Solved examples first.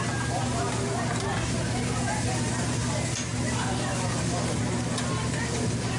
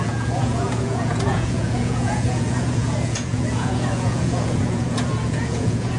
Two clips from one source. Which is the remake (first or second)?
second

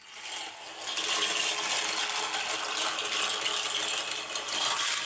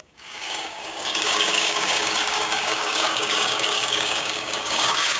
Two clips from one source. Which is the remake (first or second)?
second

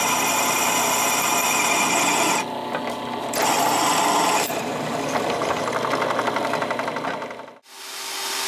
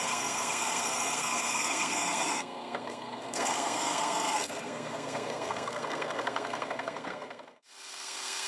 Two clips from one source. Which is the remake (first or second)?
second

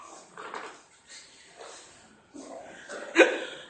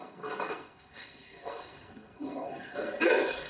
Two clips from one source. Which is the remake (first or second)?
second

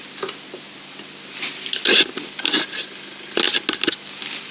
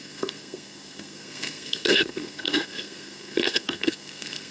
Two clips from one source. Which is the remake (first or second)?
second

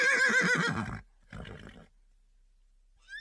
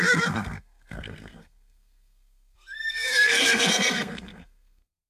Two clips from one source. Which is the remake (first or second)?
second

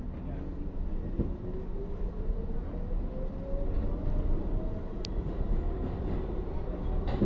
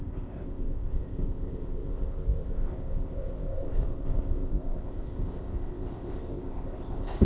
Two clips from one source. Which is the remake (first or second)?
second